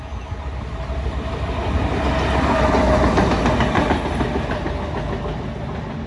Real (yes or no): yes